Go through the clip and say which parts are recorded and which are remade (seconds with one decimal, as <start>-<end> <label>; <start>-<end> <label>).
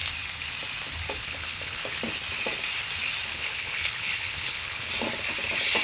0.0-1.2 recorded; 1.2-2.0 remade; 2.0-3.3 recorded; 3.3-4.9 remade; 4.9-5.8 recorded